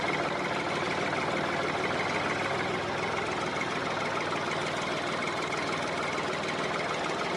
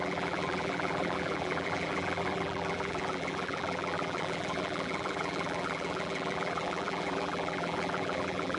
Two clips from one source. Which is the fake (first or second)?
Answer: second